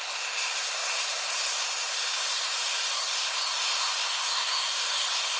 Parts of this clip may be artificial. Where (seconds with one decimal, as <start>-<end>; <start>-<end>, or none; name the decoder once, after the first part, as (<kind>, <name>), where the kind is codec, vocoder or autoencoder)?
0.0-5.4 (codec, SNAC)